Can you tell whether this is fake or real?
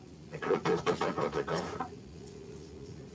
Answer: fake